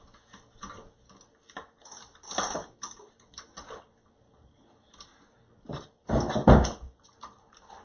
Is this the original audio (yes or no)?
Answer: yes